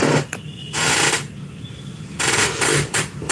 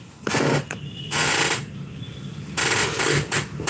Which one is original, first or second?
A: second